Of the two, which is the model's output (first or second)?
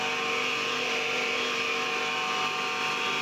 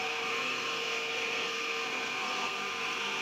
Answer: second